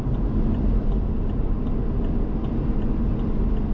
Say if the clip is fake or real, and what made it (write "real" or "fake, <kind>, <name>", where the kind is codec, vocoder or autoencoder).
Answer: real